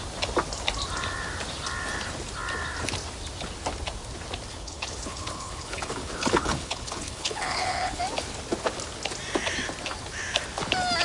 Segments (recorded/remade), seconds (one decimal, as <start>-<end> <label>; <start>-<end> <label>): 0.0-4.5 recorded; 4.5-8.0 remade; 8.0-11.0 recorded